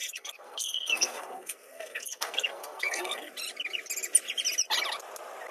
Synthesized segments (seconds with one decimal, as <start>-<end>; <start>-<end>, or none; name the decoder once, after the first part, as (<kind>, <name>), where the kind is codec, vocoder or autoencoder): 0.0-3.3 (codec, SNAC)